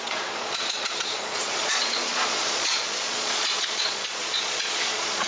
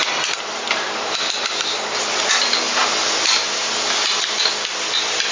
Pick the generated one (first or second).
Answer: first